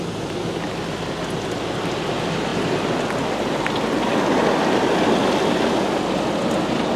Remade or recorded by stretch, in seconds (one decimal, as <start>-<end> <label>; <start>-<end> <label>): 0.0-7.0 recorded